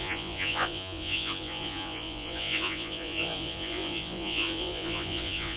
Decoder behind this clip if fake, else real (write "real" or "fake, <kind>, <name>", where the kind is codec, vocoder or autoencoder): fake, vocoder, Vocos